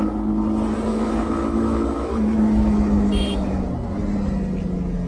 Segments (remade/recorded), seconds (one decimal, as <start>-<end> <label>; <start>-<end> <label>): 0.0-0.9 recorded; 0.9-3.6 remade; 3.6-5.1 recorded